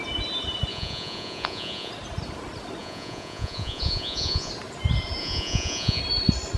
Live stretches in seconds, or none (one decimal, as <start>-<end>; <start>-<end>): 0.0-0.7; 1.9-2.8; 4.5-5.2; 6.0-6.6